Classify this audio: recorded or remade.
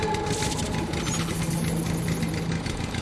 recorded